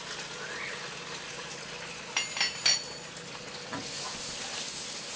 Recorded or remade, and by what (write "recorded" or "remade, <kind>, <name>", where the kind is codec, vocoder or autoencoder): recorded